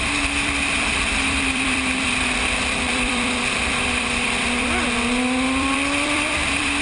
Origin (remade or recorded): remade